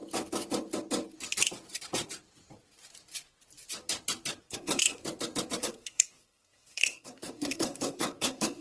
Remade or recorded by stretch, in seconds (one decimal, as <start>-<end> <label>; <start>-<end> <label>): 0.0-4.4 recorded; 4.4-5.0 remade; 5.0-5.6 recorded; 5.6-8.6 remade